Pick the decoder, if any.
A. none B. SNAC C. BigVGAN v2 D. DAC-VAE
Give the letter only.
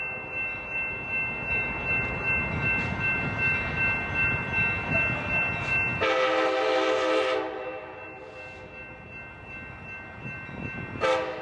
A